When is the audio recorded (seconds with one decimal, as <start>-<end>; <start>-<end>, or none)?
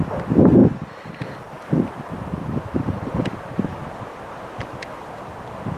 0.0-0.6; 1.2-1.6; 2.3-5.8